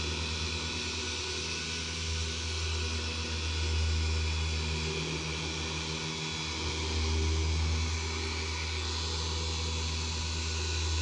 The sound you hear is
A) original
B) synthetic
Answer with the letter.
A